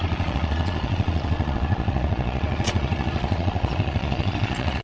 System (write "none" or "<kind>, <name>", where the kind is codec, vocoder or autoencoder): vocoder, Vocos